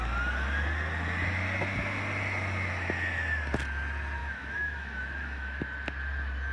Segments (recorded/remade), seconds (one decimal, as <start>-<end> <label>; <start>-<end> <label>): 0.0-4.2 recorded; 4.2-5.6 remade; 5.6-6.5 recorded